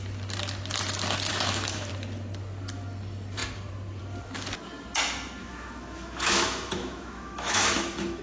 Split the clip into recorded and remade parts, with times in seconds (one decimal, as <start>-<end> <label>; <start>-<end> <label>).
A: 0.0-1.3 recorded; 1.3-1.9 remade; 1.9-5.4 recorded; 5.4-8.2 remade